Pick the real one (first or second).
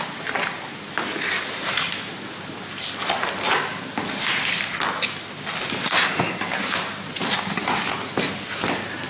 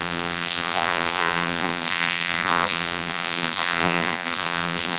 first